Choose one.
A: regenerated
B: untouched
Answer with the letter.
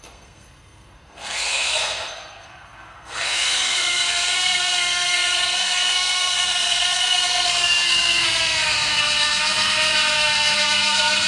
A